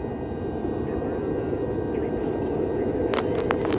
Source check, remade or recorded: recorded